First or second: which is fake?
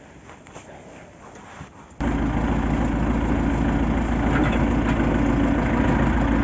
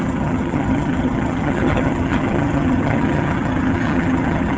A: second